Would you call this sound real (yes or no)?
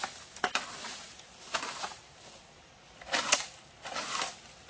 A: yes